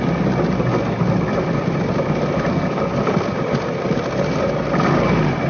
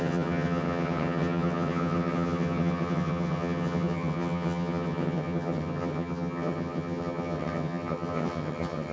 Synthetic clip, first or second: second